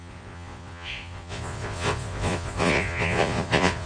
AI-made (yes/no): yes